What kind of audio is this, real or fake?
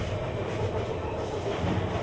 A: real